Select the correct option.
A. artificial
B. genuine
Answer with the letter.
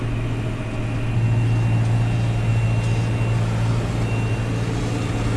B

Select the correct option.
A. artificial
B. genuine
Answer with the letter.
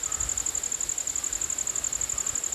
B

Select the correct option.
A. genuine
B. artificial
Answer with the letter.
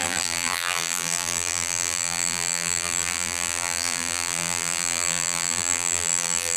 B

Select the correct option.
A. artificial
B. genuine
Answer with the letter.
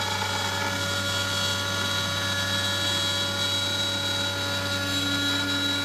B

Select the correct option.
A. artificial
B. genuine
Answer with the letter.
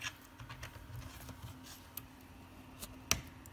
B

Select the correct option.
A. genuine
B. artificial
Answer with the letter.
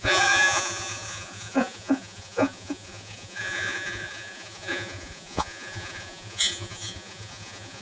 B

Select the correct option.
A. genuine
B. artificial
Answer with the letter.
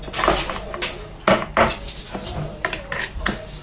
A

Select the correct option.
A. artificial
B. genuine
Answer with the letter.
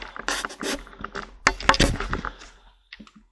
B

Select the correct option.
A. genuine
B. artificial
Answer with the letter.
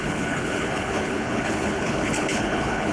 B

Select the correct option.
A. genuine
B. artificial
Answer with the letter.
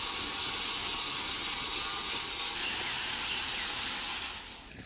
A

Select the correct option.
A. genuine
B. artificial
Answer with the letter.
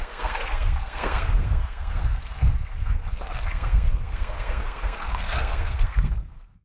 B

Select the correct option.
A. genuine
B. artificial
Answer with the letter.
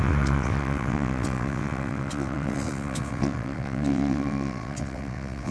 B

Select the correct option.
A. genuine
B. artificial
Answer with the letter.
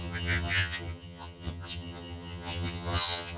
B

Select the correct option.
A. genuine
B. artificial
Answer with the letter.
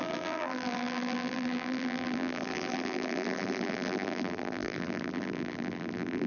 B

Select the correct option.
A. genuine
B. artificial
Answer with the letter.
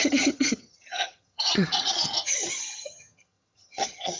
B